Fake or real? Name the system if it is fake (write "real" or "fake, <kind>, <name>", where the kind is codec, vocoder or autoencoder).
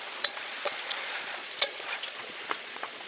fake, vocoder, Vocos